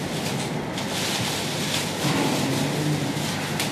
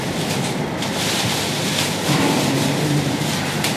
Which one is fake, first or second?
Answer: second